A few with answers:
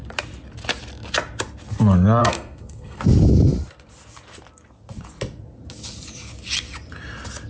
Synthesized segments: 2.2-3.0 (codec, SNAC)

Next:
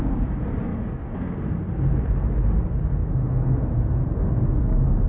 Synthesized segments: 3.0-4.2 (vocoder, Vocos)

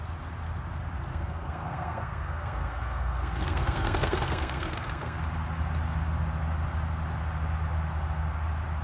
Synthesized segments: 1.1-5.2 (codec, SNAC)

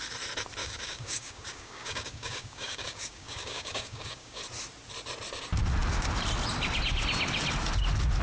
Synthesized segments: 0.6-4.4 (codec, DAC)